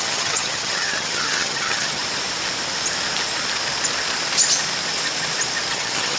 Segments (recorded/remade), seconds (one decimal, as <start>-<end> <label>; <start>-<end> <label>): 0.0-2.0 remade; 2.0-5.7 recorded; 5.7-6.2 remade